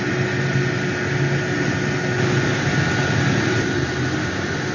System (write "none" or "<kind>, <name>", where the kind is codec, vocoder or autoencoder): none